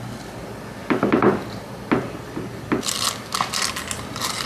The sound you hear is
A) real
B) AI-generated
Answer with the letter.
A